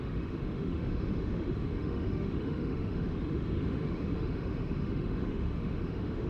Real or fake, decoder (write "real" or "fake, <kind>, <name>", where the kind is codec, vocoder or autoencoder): fake, autoencoder, DAC-VAE